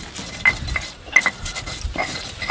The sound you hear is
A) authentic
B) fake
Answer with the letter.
A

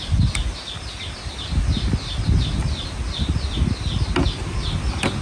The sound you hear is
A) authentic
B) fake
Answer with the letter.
A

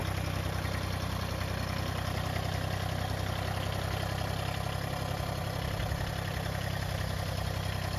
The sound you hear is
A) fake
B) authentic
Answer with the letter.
B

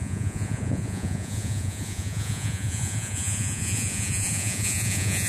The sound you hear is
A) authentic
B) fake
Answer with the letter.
B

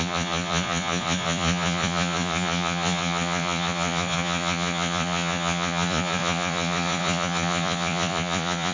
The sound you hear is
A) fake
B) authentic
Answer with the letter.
A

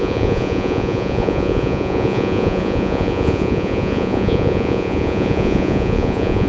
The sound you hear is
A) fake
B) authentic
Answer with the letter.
A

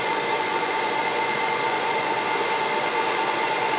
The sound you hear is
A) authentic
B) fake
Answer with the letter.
B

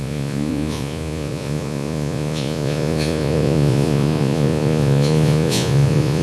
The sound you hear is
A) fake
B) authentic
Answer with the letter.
A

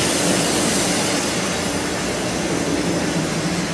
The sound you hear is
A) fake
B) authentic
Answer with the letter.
B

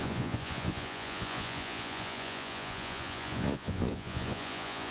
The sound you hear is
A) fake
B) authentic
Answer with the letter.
A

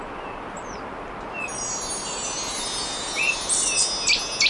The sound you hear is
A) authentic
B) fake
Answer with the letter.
A